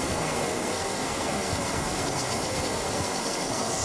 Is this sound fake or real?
fake